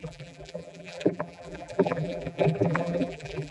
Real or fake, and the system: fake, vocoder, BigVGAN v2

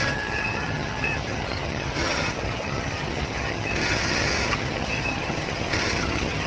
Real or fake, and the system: fake, vocoder, HiFi-GAN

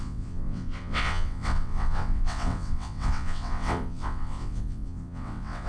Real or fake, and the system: fake, vocoder, WaveNeXt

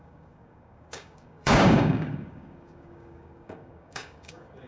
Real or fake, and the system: fake, codec, DAC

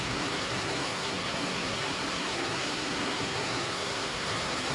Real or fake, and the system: fake, codec, SNAC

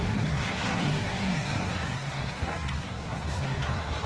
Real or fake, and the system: fake, codec, SNAC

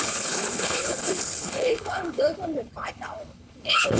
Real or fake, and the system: fake, codec, HILCodec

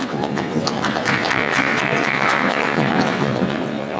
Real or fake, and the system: fake, vocoder, WaveNeXt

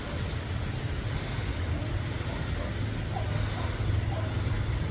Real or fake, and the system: real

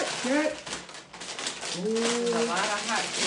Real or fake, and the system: real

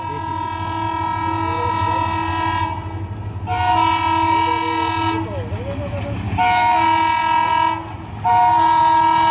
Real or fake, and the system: real